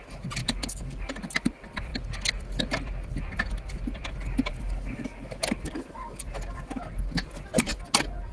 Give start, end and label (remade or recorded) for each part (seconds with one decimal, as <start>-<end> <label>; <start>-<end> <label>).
0.0-0.4 recorded; 0.4-1.1 remade; 1.1-4.5 recorded; 4.5-6.2 remade; 6.2-8.3 recorded